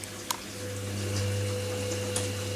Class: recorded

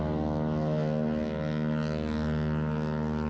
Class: recorded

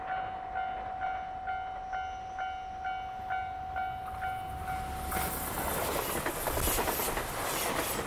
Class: recorded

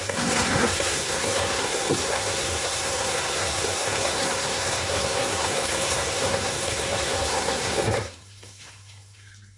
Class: remade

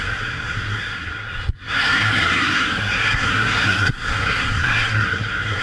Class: remade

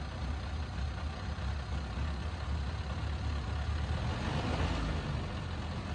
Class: recorded